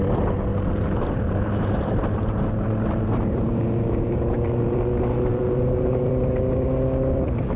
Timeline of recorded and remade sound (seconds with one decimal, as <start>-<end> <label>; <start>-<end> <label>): 0.0-0.5 recorded; 0.5-4.8 remade; 4.8-5.3 recorded; 5.3-6.1 remade; 6.1-7.6 recorded